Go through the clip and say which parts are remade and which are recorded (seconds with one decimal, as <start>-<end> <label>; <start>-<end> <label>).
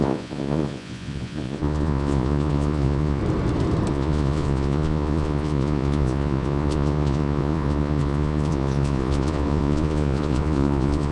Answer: 0.0-3.2 remade; 3.2-3.9 recorded; 3.9-11.1 remade